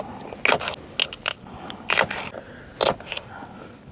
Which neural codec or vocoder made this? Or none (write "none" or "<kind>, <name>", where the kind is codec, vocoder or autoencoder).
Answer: none